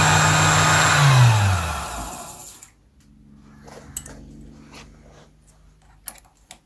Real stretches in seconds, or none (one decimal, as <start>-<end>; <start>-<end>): 0.0-6.7